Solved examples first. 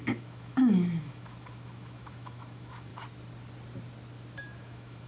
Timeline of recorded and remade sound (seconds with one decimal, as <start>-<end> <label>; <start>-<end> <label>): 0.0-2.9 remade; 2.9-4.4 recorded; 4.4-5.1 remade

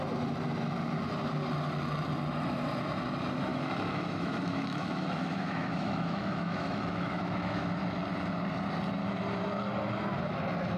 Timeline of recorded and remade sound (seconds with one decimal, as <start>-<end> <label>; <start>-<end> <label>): 0.0-3.5 recorded; 3.5-7.7 remade; 7.7-10.8 recorded

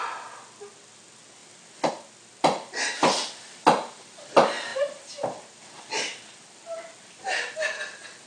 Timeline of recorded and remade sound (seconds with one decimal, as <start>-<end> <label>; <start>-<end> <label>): 0.0-8.3 recorded